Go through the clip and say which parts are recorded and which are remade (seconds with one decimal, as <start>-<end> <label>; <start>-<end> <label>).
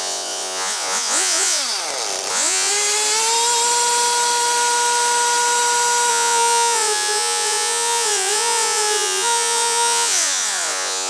0.0-1.6 remade; 1.6-2.3 recorded; 2.3-2.7 remade; 2.7-6.1 recorded; 6.1-11.1 remade